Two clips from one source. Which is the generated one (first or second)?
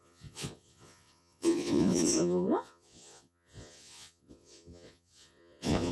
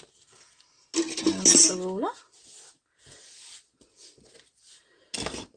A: first